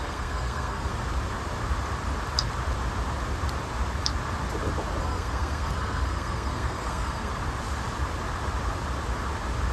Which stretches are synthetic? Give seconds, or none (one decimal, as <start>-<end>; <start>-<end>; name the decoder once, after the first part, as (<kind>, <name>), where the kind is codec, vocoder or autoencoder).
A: 0.0-0.9 (codec, SNAC); 5.0-7.3